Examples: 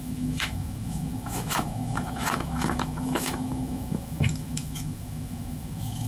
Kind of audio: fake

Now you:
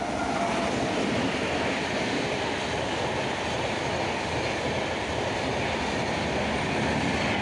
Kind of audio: real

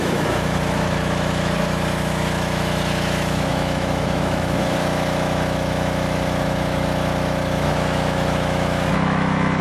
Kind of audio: fake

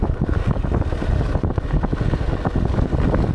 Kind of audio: real